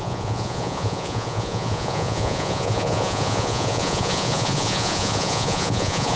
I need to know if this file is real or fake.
fake